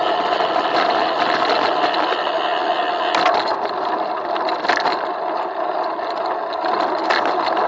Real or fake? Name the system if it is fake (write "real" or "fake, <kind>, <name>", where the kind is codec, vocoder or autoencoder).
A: real